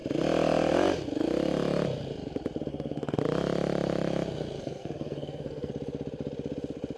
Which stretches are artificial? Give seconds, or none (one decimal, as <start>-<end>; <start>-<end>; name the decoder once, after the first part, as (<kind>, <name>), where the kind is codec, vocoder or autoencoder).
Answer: 2.7-3.2 (codec, SNAC); 4.6-5.7